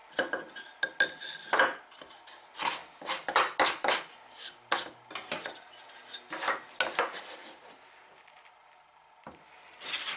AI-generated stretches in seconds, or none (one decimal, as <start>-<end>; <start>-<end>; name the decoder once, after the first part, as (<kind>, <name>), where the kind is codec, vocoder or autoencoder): none

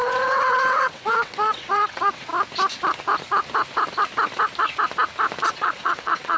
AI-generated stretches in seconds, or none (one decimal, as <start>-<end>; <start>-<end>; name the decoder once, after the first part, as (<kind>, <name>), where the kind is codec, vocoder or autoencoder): 0.0-2.3 (vocoder, WaveNeXt); 5.5-6.4

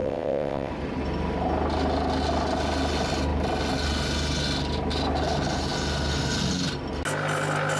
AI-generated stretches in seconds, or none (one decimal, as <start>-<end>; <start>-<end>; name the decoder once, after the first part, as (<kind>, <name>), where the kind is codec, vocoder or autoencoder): 0.0-0.7 (vocoder, WaveNeXt)